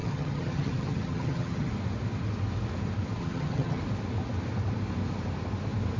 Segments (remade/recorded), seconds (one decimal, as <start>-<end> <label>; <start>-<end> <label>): 0.0-1.7 remade; 1.7-3.2 recorded; 3.2-3.8 remade; 3.8-6.0 recorded